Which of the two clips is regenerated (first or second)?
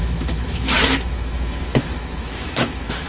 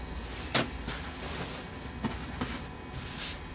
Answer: first